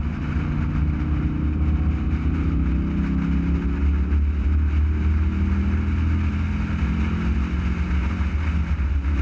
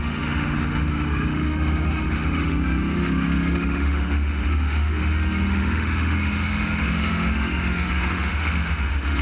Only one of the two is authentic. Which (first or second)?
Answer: first